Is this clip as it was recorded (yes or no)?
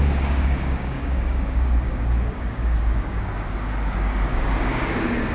no